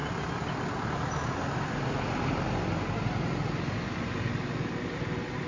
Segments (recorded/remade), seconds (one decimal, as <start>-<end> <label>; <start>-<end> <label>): 0.0-5.5 recorded